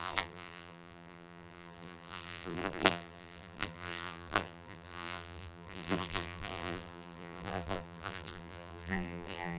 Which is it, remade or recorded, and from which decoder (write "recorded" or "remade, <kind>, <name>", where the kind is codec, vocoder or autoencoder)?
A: remade, vocoder, BigVGAN v2